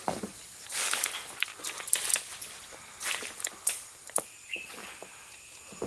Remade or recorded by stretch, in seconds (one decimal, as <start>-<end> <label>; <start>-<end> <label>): 0.0-5.9 recorded